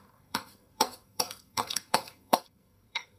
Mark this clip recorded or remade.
remade